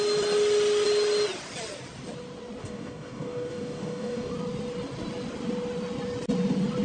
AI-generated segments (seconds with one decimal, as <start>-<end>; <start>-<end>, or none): 2.6-4.3